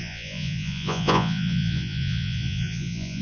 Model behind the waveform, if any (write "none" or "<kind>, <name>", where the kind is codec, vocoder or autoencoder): vocoder, Vocos